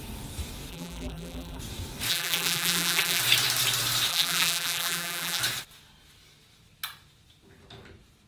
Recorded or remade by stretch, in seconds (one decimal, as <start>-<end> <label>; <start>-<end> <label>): 0.0-0.7 recorded; 0.7-1.6 remade; 1.6-2.1 recorded; 2.1-3.2 remade; 3.2-4.1 recorded; 4.1-5.4 remade; 5.4-8.3 recorded